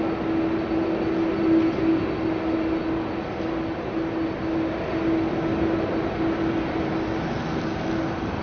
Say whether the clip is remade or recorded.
recorded